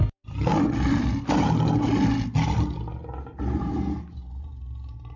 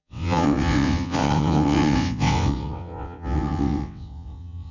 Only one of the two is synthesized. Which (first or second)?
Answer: second